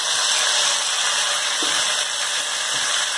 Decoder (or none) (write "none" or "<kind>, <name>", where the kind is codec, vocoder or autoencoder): none